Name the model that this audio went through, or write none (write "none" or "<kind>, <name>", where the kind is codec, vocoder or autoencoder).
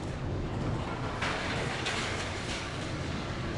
codec, DAC